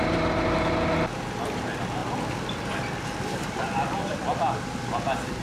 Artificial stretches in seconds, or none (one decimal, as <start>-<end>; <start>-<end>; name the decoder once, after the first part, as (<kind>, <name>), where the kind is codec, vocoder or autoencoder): none